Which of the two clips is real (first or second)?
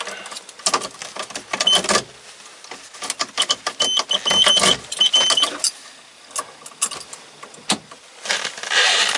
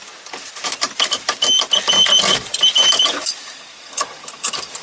first